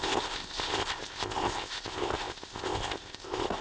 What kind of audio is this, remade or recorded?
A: remade